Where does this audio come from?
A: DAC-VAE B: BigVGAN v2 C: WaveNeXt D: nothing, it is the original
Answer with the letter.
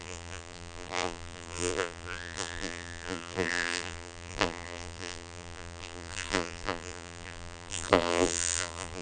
B